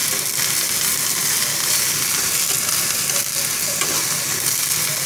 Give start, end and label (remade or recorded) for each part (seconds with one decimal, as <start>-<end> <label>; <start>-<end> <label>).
0.0-5.1 recorded